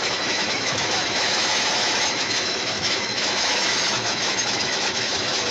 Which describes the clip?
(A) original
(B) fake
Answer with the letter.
B